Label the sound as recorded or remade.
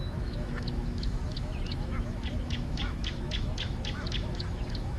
remade